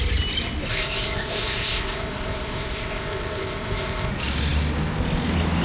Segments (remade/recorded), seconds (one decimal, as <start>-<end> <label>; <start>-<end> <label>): 0.0-0.7 recorded; 0.7-4.1 remade; 4.1-5.6 recorded